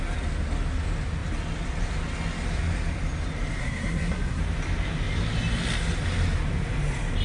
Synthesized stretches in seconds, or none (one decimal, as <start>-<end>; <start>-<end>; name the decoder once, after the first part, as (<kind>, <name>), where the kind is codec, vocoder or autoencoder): 3.6-4.4 (codec, SNAC)

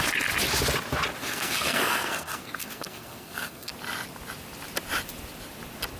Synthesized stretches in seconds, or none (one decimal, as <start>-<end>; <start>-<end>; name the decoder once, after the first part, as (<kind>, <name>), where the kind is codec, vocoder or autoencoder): 1.2-3.7 (codec, SNAC)

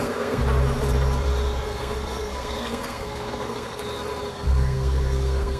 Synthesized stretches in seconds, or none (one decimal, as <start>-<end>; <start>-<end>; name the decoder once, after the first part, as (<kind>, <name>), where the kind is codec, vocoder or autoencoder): 0.0-0.4 (codec, SNAC); 1.8-3.8; 4.3-5.6

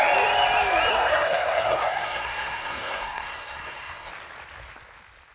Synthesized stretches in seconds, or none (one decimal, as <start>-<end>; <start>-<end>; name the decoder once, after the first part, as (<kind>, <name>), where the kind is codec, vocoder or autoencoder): 0.9-4.1 (codec, SNAC)

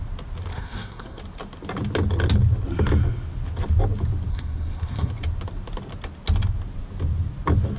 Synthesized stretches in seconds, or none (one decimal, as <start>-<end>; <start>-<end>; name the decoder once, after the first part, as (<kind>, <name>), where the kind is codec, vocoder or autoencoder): 0.5-1.2 (codec, SNAC); 4.3-5.1

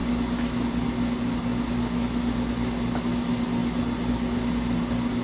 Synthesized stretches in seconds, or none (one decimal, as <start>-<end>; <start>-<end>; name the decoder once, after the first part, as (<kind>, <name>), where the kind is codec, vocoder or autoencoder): none

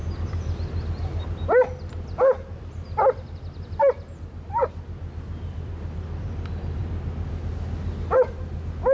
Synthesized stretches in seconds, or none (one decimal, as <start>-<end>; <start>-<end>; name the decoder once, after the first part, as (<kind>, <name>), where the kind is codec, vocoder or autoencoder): none